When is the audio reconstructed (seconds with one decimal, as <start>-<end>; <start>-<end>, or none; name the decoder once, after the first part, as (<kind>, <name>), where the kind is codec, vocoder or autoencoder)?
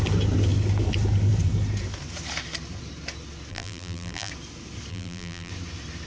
3.5-4.3 (vocoder, BigVGAN v2); 4.9-5.5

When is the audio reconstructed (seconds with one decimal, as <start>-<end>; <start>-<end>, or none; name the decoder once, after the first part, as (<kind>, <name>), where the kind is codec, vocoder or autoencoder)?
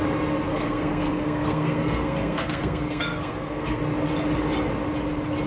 0.5-3.8 (codec, SNAC)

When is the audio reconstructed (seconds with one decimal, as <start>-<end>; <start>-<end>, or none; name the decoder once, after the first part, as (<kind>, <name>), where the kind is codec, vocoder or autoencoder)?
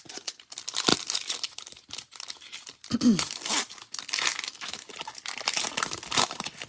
4.3-4.9 (autoencoder, DAC-VAE)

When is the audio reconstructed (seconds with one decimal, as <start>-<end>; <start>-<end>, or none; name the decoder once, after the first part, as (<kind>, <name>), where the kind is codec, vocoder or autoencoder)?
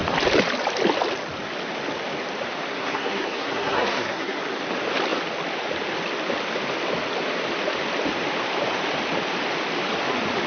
2.7-4.4 (codec, SNAC)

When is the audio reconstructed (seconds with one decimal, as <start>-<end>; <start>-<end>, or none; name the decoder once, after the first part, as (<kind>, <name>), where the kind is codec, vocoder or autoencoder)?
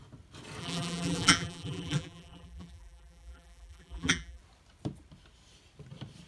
0.6-4.4 (vocoder, BigVGAN v2)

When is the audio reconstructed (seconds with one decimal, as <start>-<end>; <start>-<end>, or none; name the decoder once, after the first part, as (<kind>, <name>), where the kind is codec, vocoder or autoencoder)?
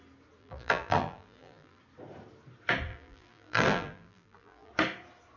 0.4-1.8 (vocoder, BigVGAN v2); 2.9-4.7